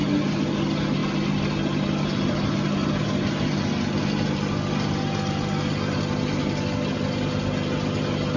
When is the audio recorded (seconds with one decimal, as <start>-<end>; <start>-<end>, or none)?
0.0-8.4